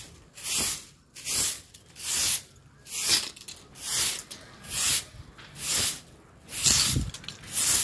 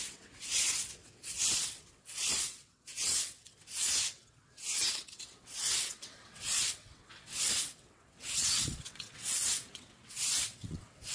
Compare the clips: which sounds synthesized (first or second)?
second